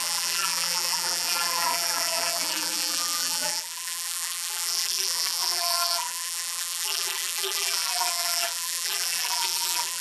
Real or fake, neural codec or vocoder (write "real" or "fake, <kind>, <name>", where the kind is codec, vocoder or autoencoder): fake, vocoder, BigVGAN v2